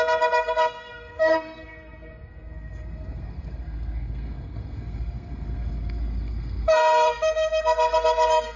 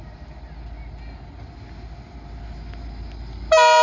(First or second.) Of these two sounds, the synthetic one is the first